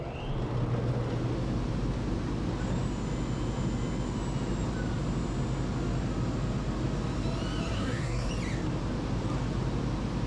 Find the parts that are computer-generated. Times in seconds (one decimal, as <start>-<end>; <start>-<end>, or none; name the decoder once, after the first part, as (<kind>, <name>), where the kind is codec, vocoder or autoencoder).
7.7-8.3 (codec, SNAC)